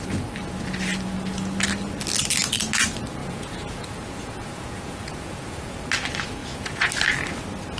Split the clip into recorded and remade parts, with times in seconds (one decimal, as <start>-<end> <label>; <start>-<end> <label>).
0.0-3.2 recorded; 3.2-5.8 remade; 5.8-6.4 recorded; 6.4-6.9 remade; 6.9-7.8 recorded